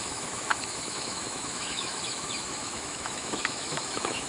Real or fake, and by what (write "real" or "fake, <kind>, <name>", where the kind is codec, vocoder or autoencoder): fake, autoencoder, DAC-VAE